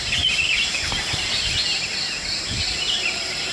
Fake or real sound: real